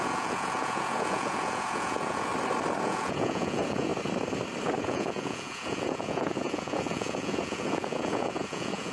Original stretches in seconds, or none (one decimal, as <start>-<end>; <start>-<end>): 2.3-2.8; 3.9-4.8